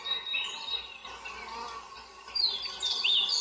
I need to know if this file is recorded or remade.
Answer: recorded